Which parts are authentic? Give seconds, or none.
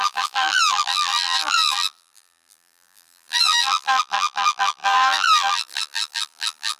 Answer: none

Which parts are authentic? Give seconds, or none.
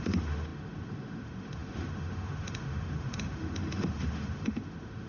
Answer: none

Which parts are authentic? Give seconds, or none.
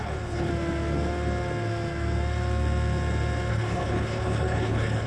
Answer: 0.5-3.5